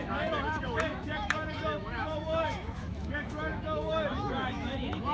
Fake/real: fake